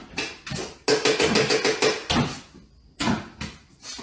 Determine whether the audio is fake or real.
real